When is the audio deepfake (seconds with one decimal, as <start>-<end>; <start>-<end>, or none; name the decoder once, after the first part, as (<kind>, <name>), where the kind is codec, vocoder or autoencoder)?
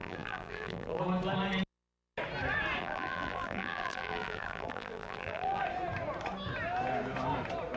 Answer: 0.0-1.0 (vocoder, BigVGAN v2); 2.8-5.6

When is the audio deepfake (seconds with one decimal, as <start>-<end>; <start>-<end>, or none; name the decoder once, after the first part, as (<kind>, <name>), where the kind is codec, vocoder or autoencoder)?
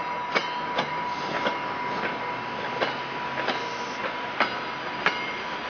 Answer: none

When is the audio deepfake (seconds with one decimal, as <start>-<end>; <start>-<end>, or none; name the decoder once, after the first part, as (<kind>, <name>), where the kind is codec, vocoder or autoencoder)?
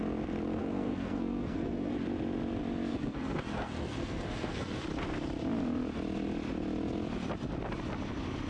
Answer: 0.6-1.9 (codec, SNAC); 2.9-4.8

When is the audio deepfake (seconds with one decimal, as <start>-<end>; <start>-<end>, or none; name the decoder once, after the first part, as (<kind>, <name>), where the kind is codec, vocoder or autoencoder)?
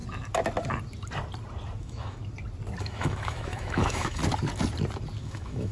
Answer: 1.8-2.2 (autoencoder, DAC-VAE); 2.8-4.2; 5.2-5.7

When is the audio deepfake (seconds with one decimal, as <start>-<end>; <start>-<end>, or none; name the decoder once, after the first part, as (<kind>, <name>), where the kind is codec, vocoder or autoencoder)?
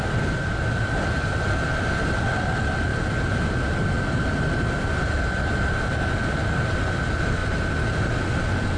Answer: none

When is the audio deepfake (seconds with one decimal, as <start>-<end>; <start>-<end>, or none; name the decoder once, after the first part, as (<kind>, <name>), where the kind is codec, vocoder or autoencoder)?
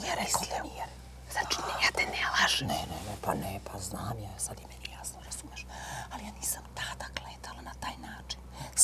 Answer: none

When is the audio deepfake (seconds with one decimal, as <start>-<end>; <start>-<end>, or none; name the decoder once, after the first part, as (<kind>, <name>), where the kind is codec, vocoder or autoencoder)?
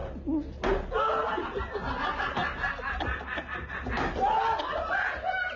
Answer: none